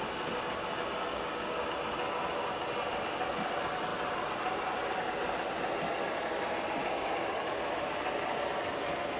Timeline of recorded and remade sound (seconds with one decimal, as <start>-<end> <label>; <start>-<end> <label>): 0.0-1.1 recorded; 1.1-1.7 remade; 1.7-6.8 recorded; 6.8-7.4 remade; 7.4-9.2 recorded